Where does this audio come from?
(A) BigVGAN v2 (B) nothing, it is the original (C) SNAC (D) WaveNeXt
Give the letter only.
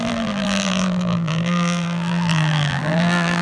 A